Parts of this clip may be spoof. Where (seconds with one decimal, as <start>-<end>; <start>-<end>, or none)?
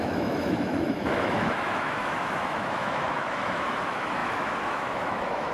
0.0-5.5